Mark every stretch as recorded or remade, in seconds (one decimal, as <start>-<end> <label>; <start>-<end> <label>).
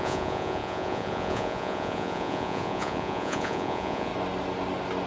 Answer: 0.0-4.1 remade; 4.1-5.1 recorded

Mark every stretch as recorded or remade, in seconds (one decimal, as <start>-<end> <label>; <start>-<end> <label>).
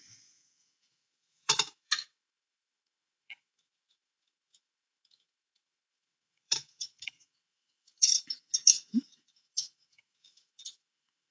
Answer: 0.0-11.3 remade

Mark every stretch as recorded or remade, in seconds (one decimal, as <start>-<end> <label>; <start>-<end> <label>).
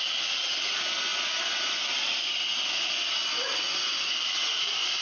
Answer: 0.0-5.0 recorded